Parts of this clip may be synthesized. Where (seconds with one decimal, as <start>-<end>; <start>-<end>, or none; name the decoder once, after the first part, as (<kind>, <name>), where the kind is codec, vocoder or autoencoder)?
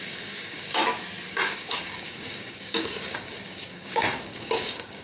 0.0-0.8 (codec, DAC); 1.3-5.0